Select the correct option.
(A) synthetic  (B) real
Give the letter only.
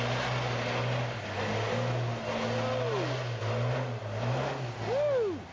B